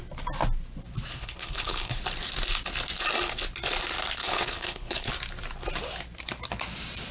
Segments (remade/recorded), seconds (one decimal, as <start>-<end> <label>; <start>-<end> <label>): 0.0-1.1 recorded; 1.1-2.0 remade; 2.0-4.2 recorded; 4.2-5.1 remade; 5.1-7.1 recorded